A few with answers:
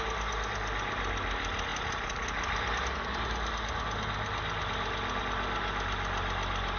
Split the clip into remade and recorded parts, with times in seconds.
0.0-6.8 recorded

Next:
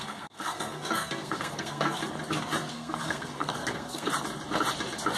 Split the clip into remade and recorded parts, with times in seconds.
0.0-2.0 remade; 2.0-2.7 recorded; 2.7-4.1 remade; 4.1-5.2 recorded

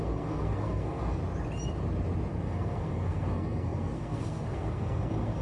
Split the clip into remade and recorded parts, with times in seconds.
0.0-1.2 remade; 1.2-2.3 recorded; 2.3-5.4 remade

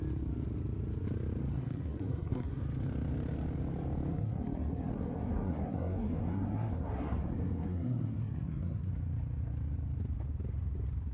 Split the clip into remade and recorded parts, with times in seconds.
0.0-1.5 recorded; 1.5-2.6 remade; 2.6-4.1 recorded; 4.1-8.9 remade; 8.9-11.1 recorded

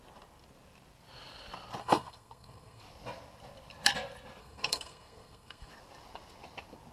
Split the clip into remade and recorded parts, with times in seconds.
0.0-1.8 recorded; 1.8-2.8 remade; 2.8-4.4 recorded; 4.4-5.7 remade; 5.7-6.9 recorded